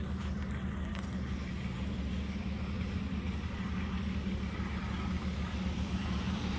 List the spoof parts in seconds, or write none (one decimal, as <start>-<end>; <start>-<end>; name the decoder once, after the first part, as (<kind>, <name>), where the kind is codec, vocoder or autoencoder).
none